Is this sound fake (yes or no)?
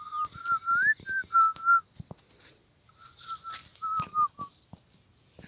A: no